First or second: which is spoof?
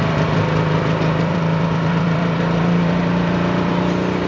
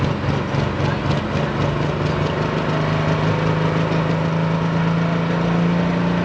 first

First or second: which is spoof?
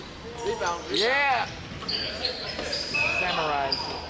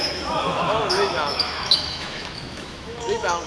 second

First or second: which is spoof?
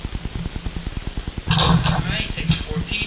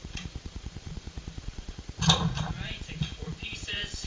second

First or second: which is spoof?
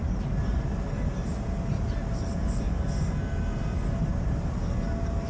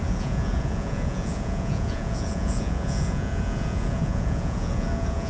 second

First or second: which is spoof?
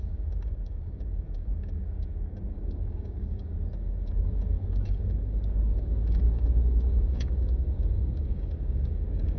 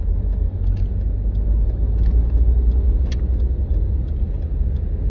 first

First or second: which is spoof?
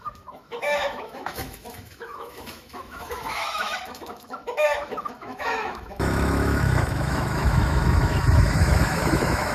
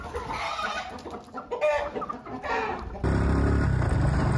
first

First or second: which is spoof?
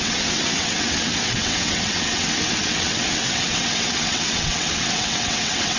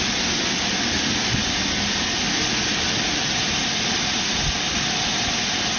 first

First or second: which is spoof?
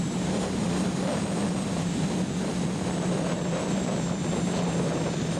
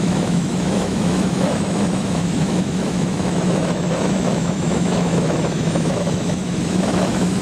second